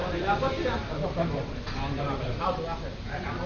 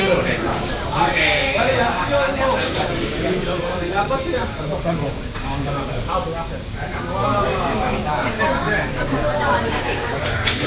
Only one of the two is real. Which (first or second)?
first